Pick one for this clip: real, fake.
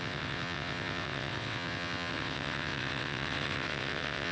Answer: fake